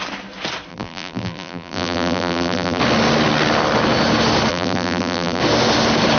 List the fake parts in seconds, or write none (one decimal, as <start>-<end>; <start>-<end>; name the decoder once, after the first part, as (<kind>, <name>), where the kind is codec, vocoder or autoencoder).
0.7-2.8 (vocoder, BigVGAN v2); 4.5-5.4